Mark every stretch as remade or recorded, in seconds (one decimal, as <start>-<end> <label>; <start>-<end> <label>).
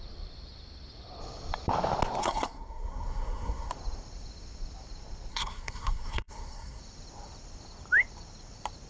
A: 0.0-2.2 recorded; 2.2-3.7 remade; 3.7-5.3 recorded; 5.3-6.8 remade; 6.8-8.9 recorded